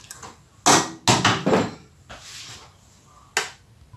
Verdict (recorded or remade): recorded